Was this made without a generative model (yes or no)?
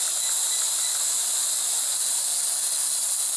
yes